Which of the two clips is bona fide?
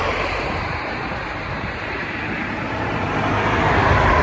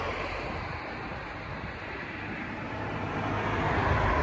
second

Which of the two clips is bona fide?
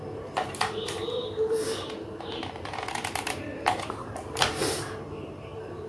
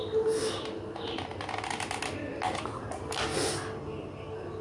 second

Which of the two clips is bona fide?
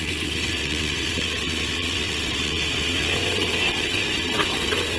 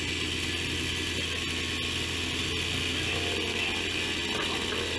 second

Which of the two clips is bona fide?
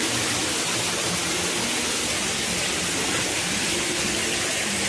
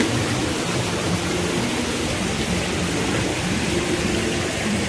first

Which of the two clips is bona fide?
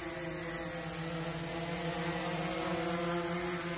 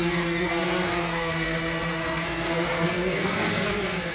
first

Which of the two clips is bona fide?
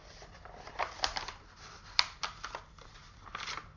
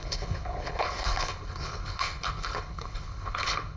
first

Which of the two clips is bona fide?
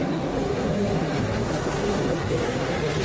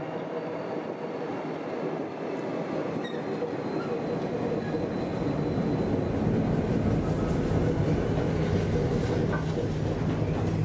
second